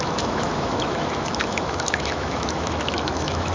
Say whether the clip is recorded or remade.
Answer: remade